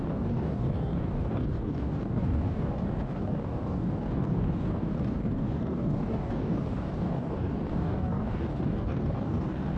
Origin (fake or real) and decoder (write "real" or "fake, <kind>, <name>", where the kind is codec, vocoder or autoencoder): fake, codec, DAC